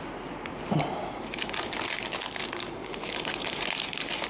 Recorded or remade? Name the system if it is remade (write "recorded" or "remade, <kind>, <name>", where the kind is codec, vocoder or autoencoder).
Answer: recorded